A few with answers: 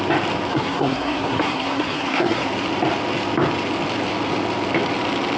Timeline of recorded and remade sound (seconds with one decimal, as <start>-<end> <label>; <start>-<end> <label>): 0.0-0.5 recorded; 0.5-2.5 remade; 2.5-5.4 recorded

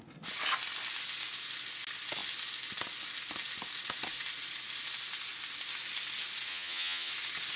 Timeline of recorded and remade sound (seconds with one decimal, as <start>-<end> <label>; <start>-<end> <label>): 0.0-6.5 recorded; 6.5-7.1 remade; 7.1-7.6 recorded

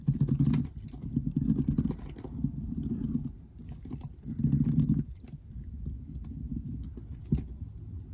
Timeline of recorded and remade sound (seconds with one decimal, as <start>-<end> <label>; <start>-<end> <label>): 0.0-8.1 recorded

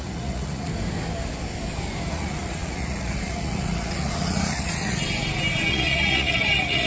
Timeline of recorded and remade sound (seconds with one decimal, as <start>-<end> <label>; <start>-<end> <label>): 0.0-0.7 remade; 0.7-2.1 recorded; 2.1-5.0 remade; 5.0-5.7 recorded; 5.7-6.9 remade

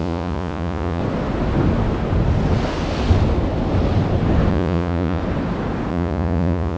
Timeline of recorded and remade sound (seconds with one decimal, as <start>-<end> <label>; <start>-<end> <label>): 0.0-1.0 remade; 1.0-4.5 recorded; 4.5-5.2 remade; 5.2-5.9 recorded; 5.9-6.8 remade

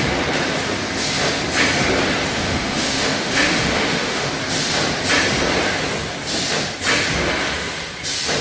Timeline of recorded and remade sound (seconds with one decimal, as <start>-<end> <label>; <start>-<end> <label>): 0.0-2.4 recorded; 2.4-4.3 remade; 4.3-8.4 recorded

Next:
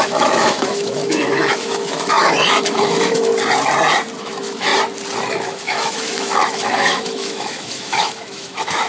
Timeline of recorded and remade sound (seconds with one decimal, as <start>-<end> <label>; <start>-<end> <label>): 0.0-3.3 remade; 3.3-4.2 recorded; 4.2-4.7 remade; 4.7-5.3 recorded; 5.3-8.9 remade